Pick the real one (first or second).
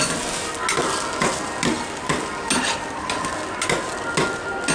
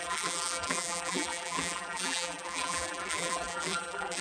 first